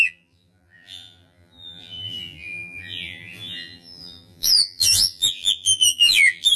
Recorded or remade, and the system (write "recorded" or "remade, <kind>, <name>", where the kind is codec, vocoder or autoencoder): remade, vocoder, BigVGAN v2